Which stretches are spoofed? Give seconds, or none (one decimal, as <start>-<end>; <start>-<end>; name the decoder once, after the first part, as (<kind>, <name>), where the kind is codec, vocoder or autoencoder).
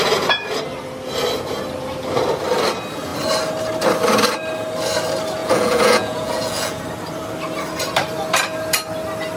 5.4-6.8 (vocoder, Vocos)